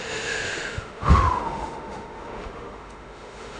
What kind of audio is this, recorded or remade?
remade